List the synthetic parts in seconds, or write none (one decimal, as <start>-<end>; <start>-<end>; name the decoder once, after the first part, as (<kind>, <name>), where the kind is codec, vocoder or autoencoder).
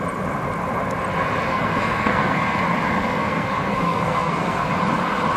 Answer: 1.5-2.6 (codec, SNAC); 3.0-4.7